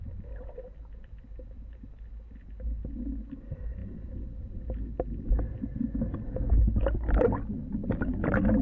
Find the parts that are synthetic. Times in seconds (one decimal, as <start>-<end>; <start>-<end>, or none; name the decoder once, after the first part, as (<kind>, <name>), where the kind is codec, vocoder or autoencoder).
none

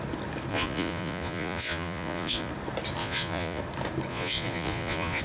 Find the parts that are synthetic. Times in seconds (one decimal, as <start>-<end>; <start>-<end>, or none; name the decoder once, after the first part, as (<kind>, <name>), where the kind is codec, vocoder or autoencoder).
0.5-2.5 (vocoder, Vocos); 3.0-3.6; 4.1-5.2

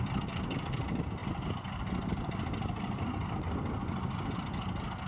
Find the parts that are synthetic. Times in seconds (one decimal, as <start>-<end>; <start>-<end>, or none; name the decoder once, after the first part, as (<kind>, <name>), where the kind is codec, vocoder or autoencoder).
none

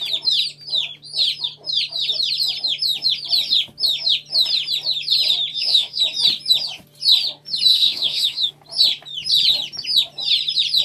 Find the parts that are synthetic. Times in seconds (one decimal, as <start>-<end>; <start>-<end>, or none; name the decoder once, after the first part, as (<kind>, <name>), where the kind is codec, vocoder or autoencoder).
5.5-6.0 (autoencoder, DAC-VAE); 7.7-8.5

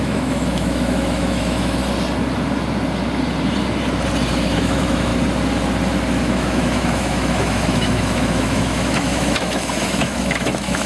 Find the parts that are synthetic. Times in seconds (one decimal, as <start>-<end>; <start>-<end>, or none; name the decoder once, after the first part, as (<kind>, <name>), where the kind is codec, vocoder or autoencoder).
0.0-1.8 (autoencoder, DAC-VAE); 4.3-5.1; 6.2-10.9

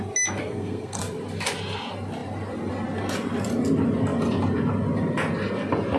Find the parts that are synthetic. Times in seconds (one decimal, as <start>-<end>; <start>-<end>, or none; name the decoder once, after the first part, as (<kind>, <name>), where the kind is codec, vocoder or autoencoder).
0.4-1.0 (codec, SNAC)

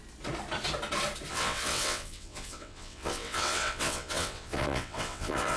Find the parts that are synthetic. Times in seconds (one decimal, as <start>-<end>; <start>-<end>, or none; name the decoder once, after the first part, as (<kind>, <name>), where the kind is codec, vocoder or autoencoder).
1.3-5.6 (vocoder, WaveNeXt)